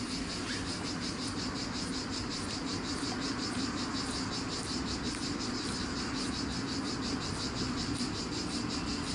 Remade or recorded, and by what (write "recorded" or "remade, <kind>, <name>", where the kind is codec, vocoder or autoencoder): recorded